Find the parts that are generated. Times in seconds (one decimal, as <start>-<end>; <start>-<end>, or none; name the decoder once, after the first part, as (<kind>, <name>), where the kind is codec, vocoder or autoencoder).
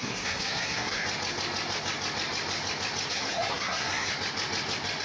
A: 0.0-1.0 (codec, SNAC); 3.1-4.1